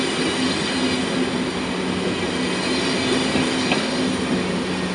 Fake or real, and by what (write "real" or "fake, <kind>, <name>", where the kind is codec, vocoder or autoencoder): real